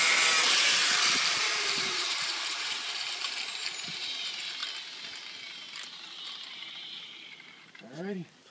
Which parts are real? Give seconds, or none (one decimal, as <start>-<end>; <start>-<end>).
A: 4.6-5.5